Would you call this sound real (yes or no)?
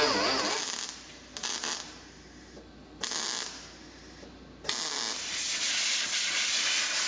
yes